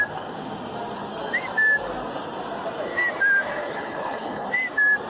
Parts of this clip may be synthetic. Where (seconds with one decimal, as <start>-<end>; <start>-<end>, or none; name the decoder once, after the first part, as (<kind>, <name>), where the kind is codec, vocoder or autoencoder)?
3.6-4.5 (codec, HILCodec)